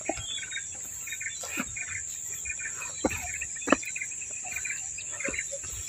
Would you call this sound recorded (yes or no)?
yes